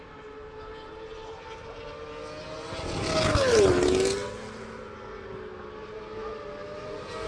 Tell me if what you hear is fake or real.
real